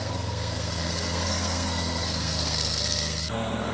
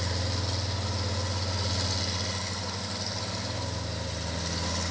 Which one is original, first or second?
second